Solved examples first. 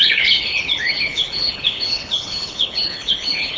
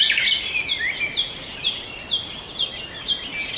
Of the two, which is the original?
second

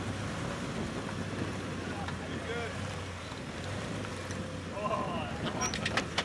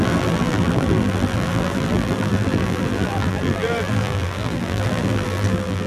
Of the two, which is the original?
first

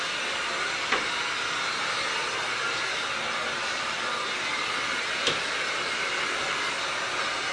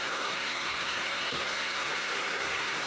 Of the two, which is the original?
first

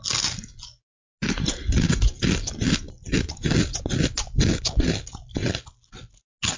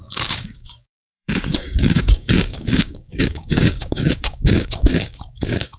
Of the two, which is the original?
first